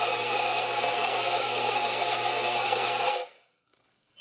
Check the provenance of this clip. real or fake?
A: fake